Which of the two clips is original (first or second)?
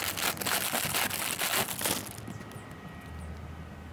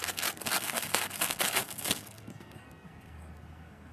first